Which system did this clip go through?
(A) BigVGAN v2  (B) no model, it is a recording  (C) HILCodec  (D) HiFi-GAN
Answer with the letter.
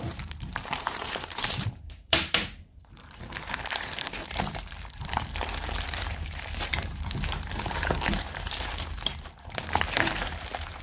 A